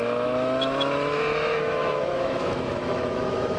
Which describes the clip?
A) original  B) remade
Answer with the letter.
B